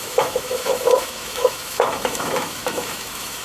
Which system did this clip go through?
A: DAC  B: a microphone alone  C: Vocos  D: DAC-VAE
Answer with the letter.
D